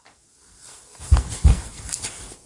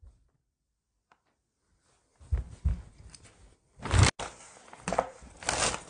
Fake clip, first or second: first